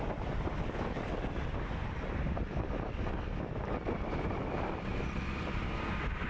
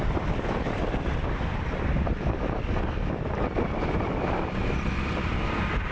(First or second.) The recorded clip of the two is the first